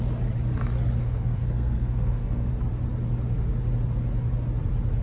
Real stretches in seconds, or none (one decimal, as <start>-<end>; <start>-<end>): 0.0-1.0; 2.5-5.0